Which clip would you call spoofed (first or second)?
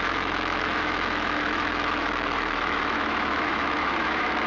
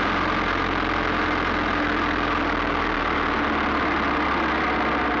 first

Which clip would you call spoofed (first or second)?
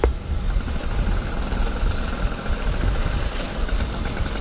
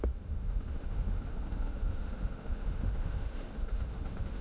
second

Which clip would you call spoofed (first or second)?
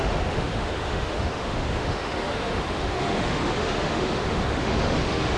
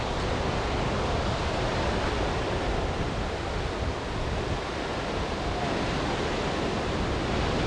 first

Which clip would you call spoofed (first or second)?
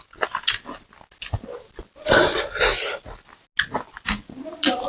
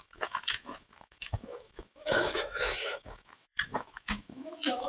second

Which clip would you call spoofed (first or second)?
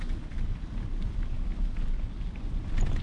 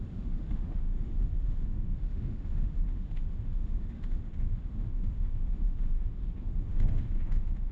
second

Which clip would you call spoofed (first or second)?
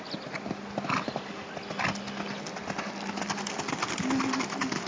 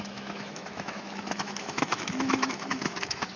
second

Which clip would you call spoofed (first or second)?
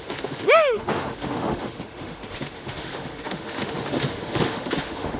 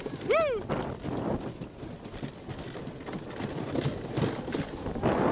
first